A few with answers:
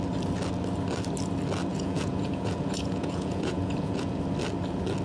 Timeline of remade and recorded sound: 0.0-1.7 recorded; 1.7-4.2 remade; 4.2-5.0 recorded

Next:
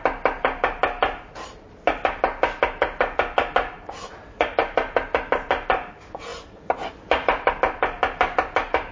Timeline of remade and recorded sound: 0.0-8.9 recorded

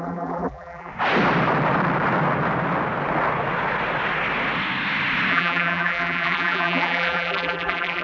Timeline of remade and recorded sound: 0.0-0.9 remade; 0.9-5.3 recorded; 5.3-8.0 remade

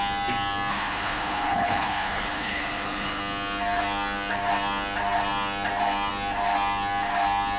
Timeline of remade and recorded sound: 0.0-0.7 recorded; 0.7-3.2 remade; 3.2-7.6 recorded

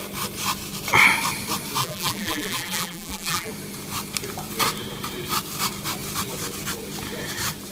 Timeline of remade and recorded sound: 0.0-1.8 recorded; 1.8-3.5 remade; 3.5-7.7 recorded

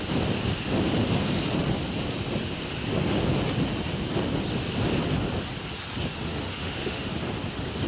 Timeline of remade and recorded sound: 0.0-6.1 recorded; 6.1-7.1 remade; 7.1-7.9 recorded